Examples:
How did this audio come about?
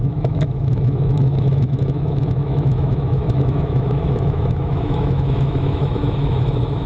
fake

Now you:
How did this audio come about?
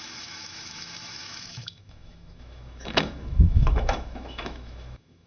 fake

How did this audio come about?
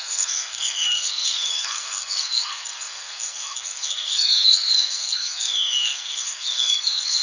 fake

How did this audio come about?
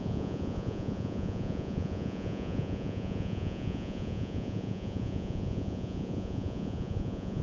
fake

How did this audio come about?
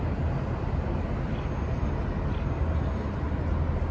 real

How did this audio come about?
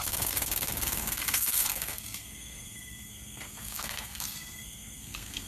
fake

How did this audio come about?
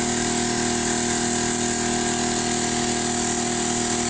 real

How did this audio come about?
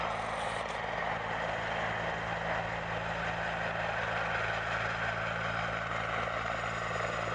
real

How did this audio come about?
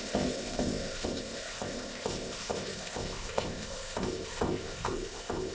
fake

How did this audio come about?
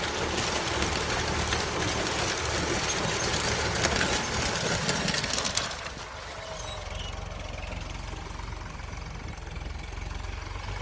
real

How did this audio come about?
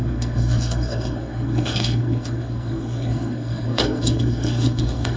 fake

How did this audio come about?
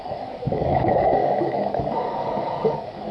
fake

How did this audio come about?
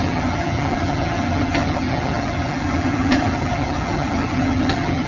fake